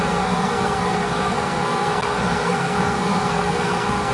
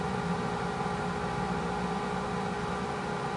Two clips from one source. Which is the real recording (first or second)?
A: second